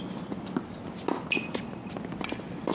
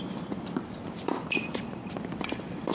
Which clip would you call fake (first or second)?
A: second